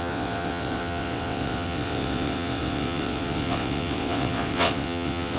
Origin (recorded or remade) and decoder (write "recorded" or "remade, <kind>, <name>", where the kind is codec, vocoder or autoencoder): remade, vocoder, WaveNeXt